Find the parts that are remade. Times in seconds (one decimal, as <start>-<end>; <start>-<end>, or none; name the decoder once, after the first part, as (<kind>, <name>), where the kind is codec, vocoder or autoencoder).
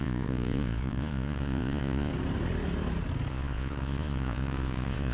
0.0-2.1 (vocoder, Vocos); 3.3-5.1